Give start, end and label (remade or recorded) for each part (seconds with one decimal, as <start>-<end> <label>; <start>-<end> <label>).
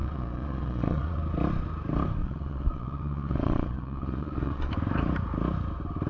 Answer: 0.0-1.2 remade; 1.2-2.2 recorded; 2.2-4.7 remade; 4.7-6.1 recorded